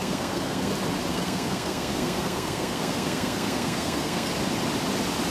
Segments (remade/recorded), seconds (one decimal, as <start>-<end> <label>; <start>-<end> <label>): 0.0-0.7 remade; 0.7-1.1 recorded; 1.1-4.3 remade; 4.3-5.3 recorded